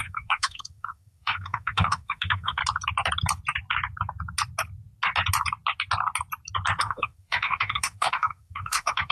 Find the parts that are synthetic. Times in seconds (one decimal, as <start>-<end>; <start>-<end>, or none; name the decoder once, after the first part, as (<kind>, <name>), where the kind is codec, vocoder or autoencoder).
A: 0.0-2.6 (autoencoder, DAC-VAE); 6.8-9.1